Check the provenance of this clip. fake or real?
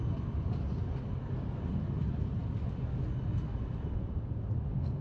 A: real